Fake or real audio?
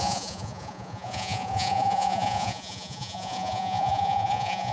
fake